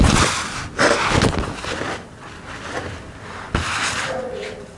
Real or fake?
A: real